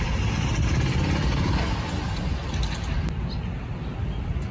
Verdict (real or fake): real